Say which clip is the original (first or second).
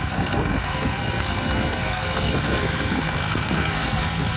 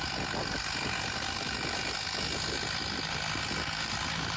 second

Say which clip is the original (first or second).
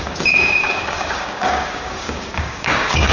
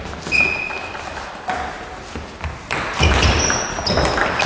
second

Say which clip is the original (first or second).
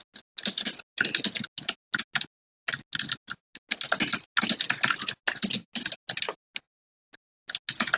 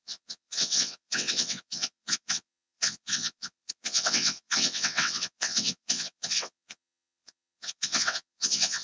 first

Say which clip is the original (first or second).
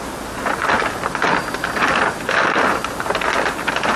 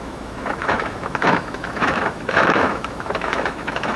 first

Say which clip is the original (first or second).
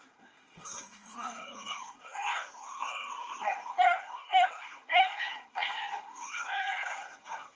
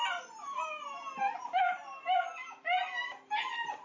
second